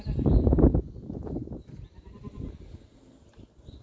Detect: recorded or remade recorded